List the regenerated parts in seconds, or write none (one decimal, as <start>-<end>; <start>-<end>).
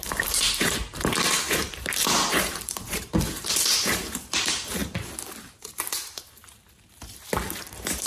0.0-4.8; 5.6-6.4; 7.6-8.1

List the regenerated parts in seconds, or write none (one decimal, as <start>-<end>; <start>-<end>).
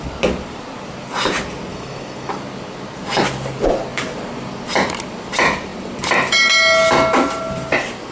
1.7-2.3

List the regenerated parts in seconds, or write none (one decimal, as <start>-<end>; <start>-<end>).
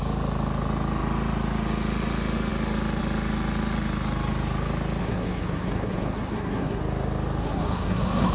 5.0-6.8; 7.4-8.3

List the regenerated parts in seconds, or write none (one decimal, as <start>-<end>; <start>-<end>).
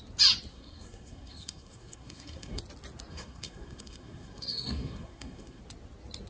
0.5-2.6; 3.1-5.6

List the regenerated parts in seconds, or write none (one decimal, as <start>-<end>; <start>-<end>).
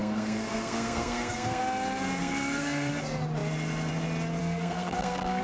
0.0-1.6; 2.2-2.9; 4.4-5.4